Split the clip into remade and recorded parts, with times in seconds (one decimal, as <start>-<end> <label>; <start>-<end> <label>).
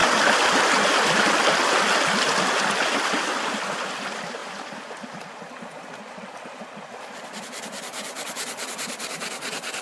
0.0-4.4 recorded; 4.4-5.5 remade; 5.5-9.8 recorded